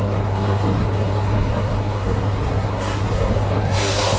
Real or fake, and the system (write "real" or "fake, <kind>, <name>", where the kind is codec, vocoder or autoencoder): fake, codec, SNAC